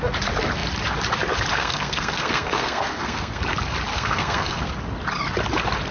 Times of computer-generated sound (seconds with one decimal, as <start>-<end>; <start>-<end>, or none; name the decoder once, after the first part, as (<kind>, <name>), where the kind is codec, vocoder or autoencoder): 1.5-3.4 (codec, SNAC); 3.9-4.7